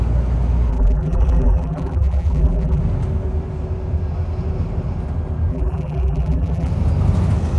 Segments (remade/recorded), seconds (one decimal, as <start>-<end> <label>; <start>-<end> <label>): 0.0-0.7 recorded; 0.7-2.8 remade; 2.8-5.5 recorded; 5.5-6.7 remade; 6.7-7.6 recorded